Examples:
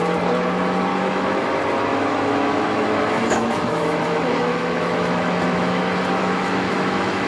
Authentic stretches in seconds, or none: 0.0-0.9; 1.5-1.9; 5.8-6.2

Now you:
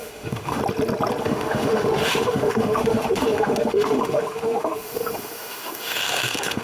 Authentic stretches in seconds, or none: 0.6-1.2

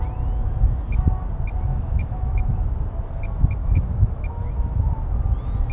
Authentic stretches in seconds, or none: 0.0-1.7; 2.5-3.6; 4.5-5.7

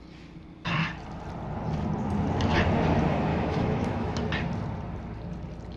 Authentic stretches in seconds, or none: 0.0-3.3; 4.2-5.8

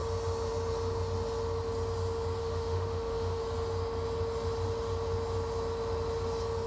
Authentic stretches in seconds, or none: 0.0-2.4; 3.4-6.7